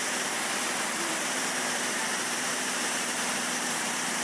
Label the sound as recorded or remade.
remade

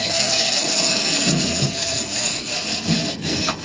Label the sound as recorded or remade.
remade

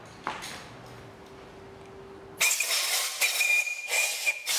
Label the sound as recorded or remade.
recorded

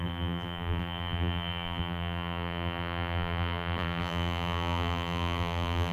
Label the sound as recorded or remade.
remade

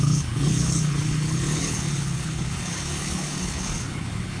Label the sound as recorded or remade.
remade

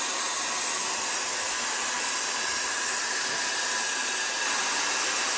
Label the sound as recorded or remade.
recorded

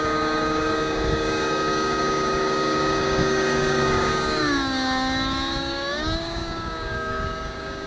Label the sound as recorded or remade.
remade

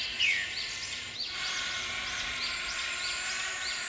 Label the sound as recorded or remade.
recorded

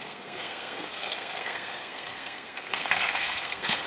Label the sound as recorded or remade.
remade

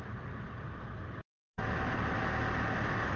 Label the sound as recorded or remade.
recorded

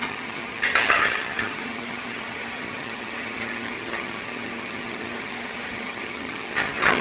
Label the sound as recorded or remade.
remade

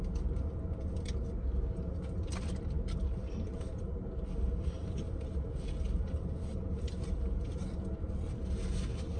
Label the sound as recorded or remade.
recorded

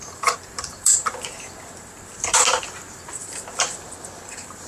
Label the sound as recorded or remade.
remade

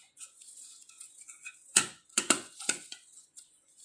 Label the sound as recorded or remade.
remade